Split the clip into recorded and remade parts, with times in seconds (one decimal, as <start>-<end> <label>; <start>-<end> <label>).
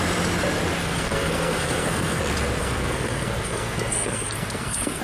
0.0-0.8 recorded; 0.8-2.2 remade; 2.2-2.6 recorded; 2.6-5.0 remade